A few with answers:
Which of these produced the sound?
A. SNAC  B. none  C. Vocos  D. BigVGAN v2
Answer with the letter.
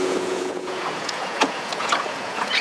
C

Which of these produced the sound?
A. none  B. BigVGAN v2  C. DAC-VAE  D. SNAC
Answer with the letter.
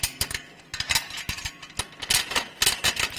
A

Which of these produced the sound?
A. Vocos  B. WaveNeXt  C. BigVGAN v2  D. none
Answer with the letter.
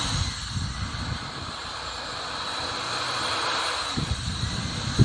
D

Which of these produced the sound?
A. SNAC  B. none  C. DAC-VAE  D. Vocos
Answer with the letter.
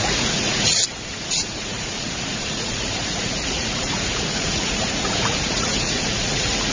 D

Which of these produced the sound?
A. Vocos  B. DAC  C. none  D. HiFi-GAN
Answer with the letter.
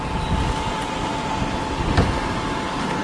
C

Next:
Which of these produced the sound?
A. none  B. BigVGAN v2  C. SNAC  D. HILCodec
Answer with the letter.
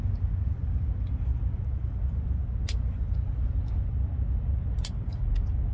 A